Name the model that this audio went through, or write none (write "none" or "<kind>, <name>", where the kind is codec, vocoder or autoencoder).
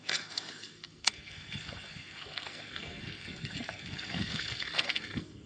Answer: codec, SNAC